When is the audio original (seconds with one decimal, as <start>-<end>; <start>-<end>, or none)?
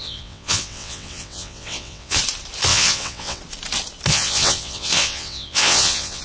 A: 2.2-2.7; 3.4-4.1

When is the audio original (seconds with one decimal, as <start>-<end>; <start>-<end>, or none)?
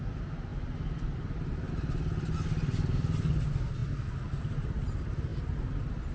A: 0.0-6.1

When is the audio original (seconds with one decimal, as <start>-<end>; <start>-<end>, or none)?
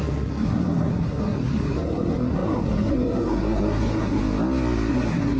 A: 4.2-4.9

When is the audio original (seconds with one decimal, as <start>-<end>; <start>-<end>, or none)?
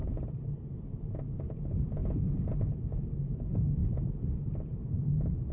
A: 2.0-2.6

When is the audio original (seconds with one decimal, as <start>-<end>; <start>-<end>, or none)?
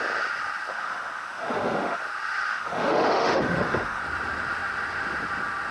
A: 0.0-0.7; 2.0-2.5; 4.0-5.7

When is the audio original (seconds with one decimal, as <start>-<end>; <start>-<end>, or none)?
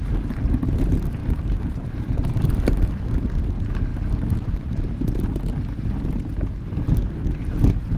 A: 0.0-1.2; 2.5-3.9; 5.3-8.0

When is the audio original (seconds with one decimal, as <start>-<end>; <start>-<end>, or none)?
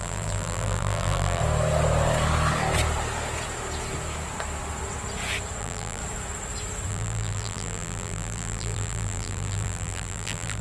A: 1.4-5.6; 6.0-6.9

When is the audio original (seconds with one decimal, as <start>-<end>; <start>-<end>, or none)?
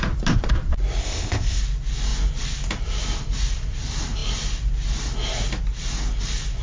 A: 0.0-1.0; 1.6-6.6